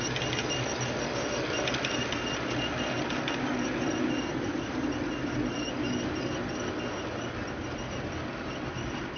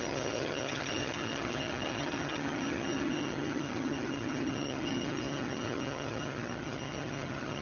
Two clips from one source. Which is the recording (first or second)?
first